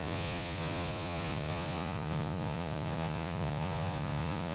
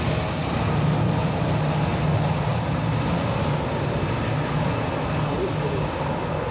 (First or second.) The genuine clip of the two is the second